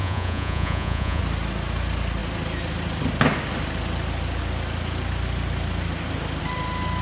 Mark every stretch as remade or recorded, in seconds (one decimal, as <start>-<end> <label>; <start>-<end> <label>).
0.0-1.2 remade; 1.2-7.0 recorded